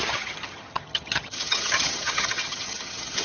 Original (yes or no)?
no